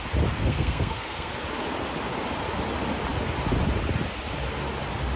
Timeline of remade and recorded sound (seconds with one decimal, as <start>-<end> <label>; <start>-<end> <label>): 0.0-0.4 recorded; 0.4-1.3 remade; 1.3-5.2 recorded